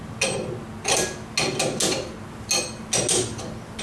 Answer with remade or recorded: recorded